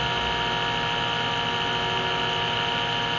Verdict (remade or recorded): recorded